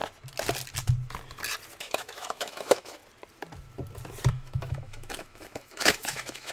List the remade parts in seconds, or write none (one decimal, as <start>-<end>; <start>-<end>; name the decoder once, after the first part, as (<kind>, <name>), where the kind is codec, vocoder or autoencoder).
1.8-3.0 (autoencoder, DAC-VAE); 4.3-6.5